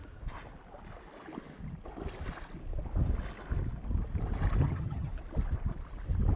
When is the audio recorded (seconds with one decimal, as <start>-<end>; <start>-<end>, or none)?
0.0-4.6; 5.1-6.4